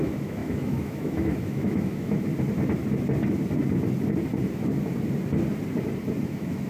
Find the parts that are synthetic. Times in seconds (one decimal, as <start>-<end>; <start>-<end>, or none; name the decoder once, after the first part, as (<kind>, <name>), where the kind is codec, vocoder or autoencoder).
0.0-2.3 (autoencoder, DAC-VAE); 6.3-6.7